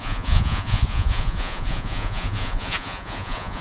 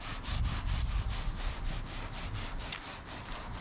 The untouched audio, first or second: second